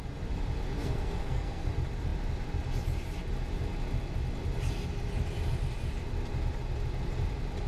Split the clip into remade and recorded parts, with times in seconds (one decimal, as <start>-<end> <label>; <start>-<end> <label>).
0.0-0.8 recorded; 0.8-1.7 remade; 1.7-7.7 recorded